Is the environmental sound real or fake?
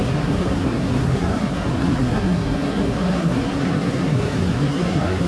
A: fake